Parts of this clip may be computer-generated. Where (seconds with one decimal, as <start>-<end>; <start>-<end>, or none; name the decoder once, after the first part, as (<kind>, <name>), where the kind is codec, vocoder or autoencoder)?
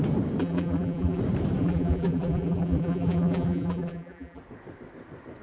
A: 0.4-1.2 (vocoder, BigVGAN v2); 1.6-4.4